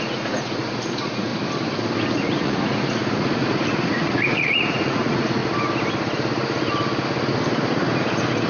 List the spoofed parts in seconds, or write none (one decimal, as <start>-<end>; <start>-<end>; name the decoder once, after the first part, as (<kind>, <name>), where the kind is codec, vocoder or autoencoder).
0.0-1.3 (vocoder, Vocos); 2.1-5.4